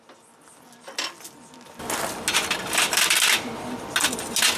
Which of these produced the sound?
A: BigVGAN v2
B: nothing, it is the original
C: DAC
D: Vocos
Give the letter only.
B